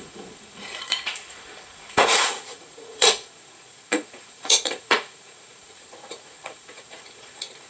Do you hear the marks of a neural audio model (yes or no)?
yes